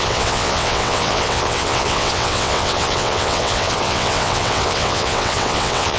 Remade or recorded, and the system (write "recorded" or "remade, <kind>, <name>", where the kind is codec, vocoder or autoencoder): remade, vocoder, WaveNeXt